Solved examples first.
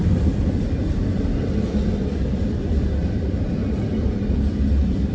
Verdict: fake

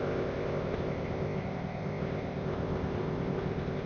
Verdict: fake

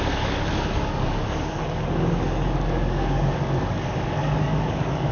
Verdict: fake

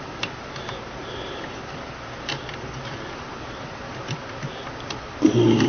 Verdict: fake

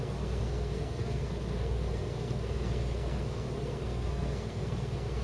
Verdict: fake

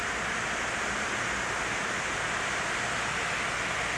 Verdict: real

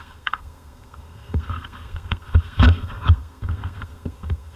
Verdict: fake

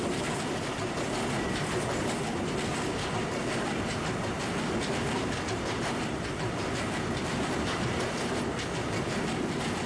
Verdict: real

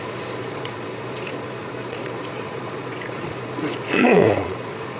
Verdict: fake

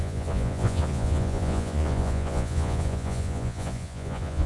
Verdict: fake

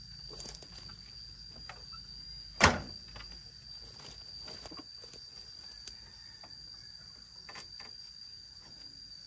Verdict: real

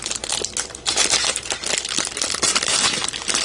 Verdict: real